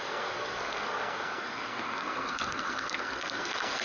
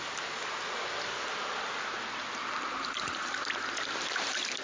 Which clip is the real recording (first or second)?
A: second